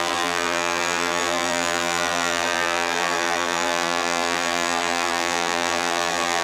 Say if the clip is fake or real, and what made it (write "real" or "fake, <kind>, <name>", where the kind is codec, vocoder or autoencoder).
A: fake, vocoder, BigVGAN v2